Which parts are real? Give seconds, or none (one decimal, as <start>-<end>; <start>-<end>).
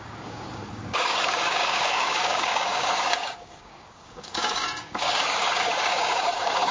none